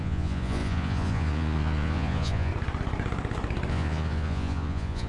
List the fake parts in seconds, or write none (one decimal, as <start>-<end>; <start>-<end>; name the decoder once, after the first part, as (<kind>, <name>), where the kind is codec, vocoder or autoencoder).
0.0-2.5 (vocoder, Vocos); 3.7-5.1